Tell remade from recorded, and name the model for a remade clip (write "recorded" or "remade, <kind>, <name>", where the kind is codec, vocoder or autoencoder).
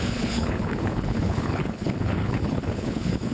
remade, codec, HILCodec